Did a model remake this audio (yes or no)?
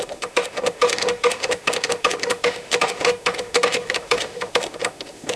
yes